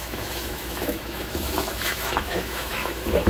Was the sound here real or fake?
fake